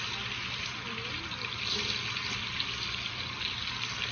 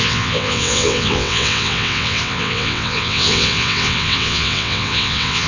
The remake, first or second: second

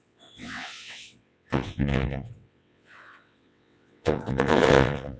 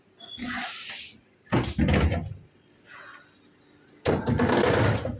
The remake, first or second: first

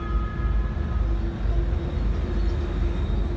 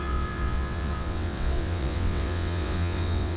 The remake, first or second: second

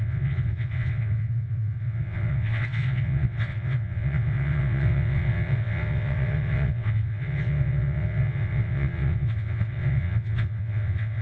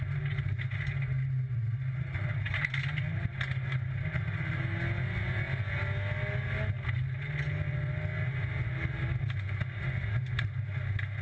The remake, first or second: first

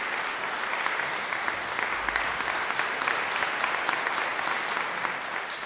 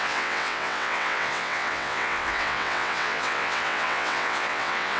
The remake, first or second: second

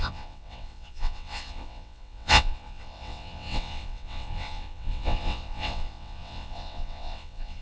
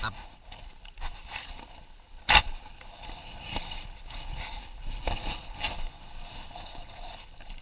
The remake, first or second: first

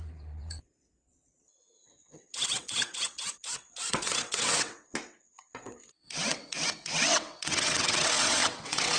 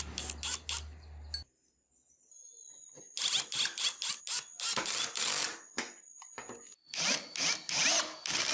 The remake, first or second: first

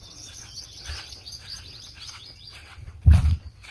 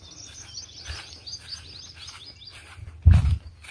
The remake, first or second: first